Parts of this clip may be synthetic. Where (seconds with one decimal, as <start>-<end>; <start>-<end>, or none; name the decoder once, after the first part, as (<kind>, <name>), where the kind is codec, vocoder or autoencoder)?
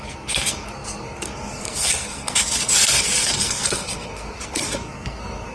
0.0-5.5 (codec, SNAC)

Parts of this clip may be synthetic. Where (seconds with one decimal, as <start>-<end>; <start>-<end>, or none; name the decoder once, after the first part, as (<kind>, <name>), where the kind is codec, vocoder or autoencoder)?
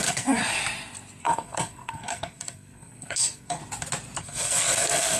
0.0-0.4 (codec, SNAC); 1.2-3.6; 4.2-5.2